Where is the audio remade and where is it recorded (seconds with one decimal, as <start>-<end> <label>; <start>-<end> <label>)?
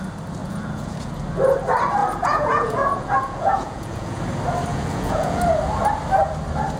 0.0-0.4 recorded; 0.4-1.1 remade; 1.1-2.0 recorded; 2.0-4.2 remade; 4.2-4.7 recorded; 4.7-5.4 remade; 5.4-6.8 recorded